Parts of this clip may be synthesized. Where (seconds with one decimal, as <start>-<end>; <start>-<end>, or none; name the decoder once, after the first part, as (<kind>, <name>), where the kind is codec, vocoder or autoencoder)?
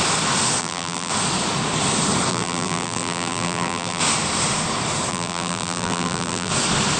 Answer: 0.6-1.1 (vocoder, BigVGAN v2); 2.3-4.0; 5.1-6.5